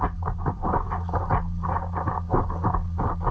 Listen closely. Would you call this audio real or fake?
real